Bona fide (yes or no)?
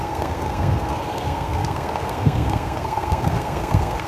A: no